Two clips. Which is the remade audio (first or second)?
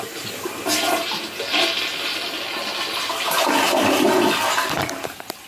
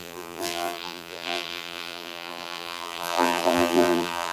second